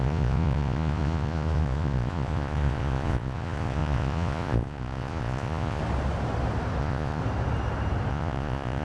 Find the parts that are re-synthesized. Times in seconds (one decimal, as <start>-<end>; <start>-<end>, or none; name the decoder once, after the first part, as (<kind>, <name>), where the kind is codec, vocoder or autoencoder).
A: 0.0-5.8 (vocoder, Vocos); 6.8-7.2; 8.1-8.8